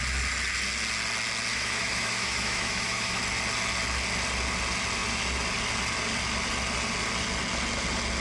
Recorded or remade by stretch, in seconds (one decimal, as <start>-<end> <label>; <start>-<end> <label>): 0.0-1.5 recorded; 1.5-3.2 remade; 3.2-8.2 recorded